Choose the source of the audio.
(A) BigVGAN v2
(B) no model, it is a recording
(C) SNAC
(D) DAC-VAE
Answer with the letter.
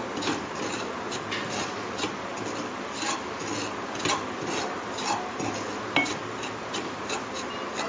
B